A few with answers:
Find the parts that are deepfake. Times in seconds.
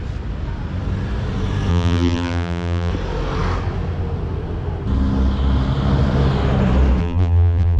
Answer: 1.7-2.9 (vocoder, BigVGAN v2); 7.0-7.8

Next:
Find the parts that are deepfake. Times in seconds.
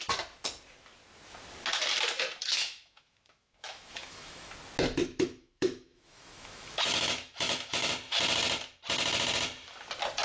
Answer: 2.4-4.5 (autoencoder, DAC-VAE); 5.0-7.9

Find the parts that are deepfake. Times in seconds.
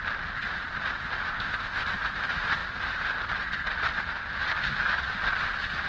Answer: 1.3-1.9 (codec, ZipCodec)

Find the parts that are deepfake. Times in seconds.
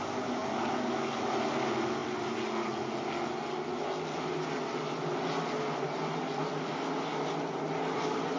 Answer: none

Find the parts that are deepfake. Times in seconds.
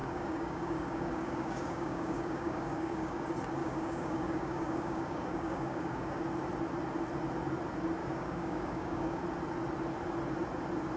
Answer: 0.0-3.2 (codec, DAC); 3.6-6.2; 8.0-9.2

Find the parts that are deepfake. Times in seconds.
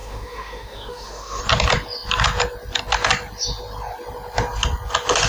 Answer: 0.0-1.4 (autoencoder, DAC-VAE)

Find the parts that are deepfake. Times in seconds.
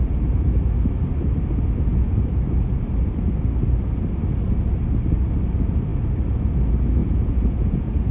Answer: 7.0-8.1 (vocoder, Vocos)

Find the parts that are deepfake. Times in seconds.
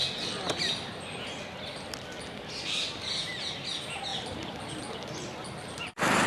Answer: 4.1-6.3 (vocoder, BigVGAN v2)